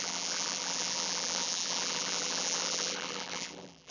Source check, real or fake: fake